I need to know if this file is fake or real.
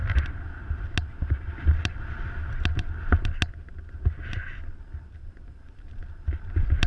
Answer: real